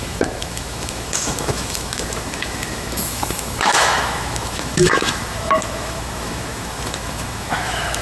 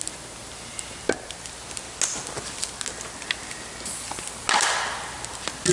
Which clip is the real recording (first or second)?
second